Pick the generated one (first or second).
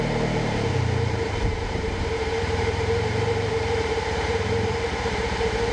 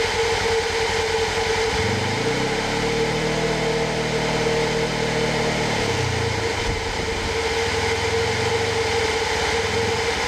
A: first